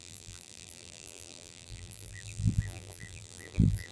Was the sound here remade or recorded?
remade